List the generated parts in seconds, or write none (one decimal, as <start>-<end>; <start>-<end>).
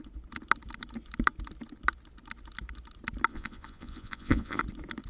3.3-4.6